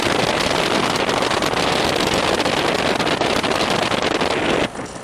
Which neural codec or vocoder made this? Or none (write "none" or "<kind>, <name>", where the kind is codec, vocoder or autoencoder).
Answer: none